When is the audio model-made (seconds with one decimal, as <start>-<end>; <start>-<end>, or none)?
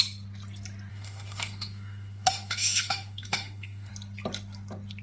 0.9-3.9